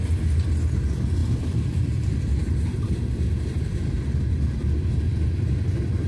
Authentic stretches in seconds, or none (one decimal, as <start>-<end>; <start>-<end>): 0.0-1.2; 4.9-6.1